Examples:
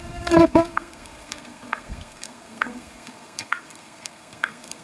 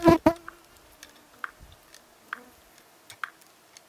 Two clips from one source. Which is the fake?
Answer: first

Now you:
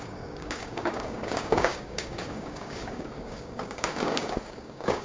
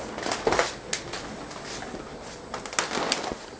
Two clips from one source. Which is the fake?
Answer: first